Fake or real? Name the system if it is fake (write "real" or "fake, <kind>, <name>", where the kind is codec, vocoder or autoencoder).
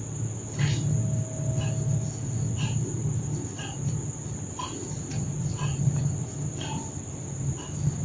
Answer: real